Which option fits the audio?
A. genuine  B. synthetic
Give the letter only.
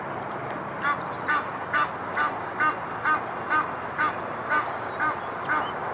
A